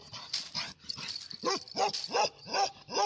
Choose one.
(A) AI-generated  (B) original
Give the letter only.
B